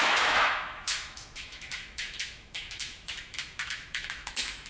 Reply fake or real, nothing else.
fake